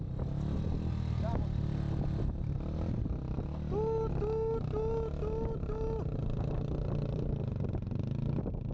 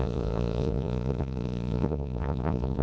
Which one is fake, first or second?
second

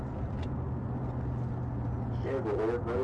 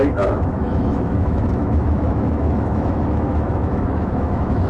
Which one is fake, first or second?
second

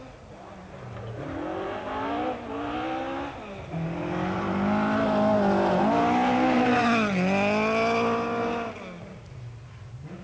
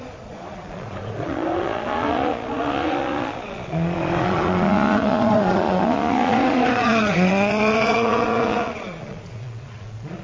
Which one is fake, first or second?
second